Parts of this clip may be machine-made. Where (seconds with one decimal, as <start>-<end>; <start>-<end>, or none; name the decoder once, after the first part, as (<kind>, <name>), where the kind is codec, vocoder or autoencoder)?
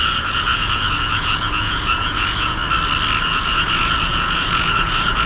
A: 0.0-2.6 (vocoder, Vocos); 3.2-5.3